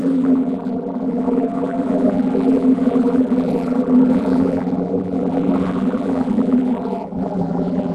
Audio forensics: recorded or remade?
remade